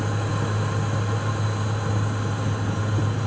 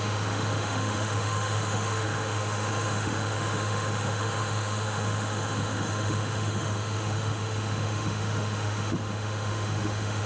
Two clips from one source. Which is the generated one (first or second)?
second